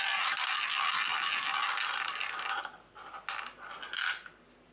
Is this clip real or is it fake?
real